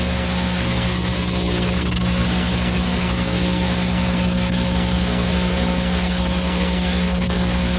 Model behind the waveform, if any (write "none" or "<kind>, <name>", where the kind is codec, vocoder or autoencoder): codec, SNAC